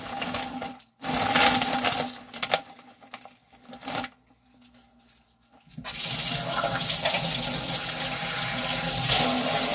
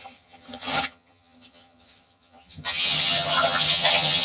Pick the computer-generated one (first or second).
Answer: second